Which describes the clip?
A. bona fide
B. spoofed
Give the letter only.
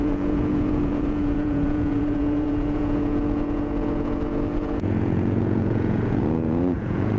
B